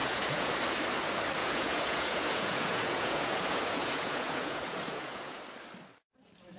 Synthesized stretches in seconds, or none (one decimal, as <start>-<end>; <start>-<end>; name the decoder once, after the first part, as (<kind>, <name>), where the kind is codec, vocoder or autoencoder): 0.0-0.5 (vocoder, Vocos); 1.4-5.4